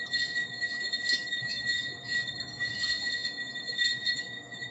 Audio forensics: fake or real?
fake